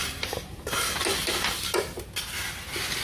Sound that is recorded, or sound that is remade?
recorded